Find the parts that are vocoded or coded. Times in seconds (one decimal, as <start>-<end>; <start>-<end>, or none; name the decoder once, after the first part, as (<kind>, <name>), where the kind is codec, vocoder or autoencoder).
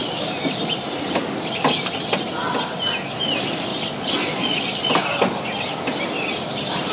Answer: 3.7-4.9 (vocoder, Vocos)